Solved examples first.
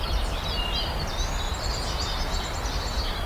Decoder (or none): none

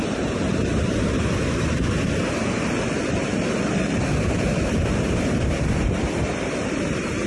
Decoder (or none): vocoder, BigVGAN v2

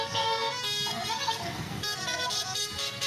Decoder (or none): codec, SNAC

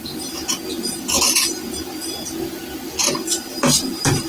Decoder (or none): none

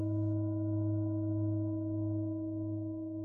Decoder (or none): autoencoder, DAC-VAE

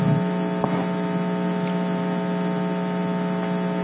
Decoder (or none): none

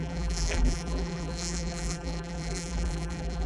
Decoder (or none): vocoder, BigVGAN v2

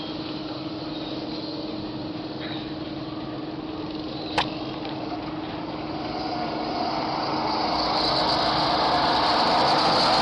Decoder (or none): none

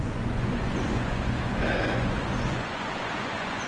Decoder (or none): vocoder, Vocos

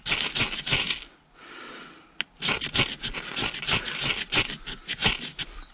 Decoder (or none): none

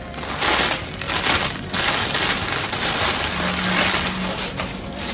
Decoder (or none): none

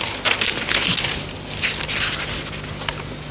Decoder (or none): none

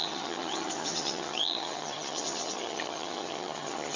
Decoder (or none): vocoder, HiFi-GAN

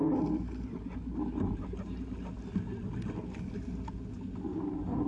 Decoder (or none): none